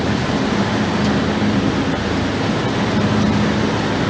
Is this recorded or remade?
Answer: recorded